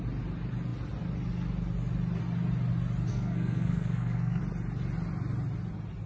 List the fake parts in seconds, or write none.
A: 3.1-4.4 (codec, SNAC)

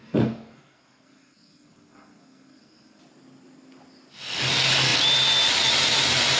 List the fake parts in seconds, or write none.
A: 0.0-3.0 (codec, SNAC)